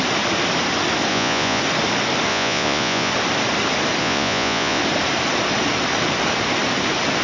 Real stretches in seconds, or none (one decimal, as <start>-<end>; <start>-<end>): 0.0-1.1; 1.6-2.3; 3.1-4.0; 4.8-7.2